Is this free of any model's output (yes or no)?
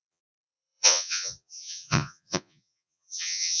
no